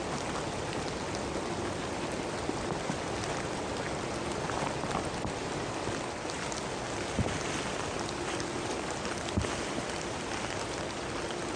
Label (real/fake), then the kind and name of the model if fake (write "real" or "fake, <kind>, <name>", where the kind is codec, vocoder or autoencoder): real